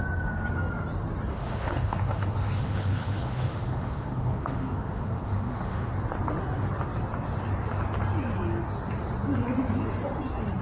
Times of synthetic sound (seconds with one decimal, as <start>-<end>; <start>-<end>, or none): 1.3-5.9